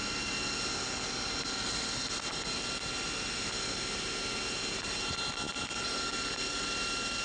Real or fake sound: real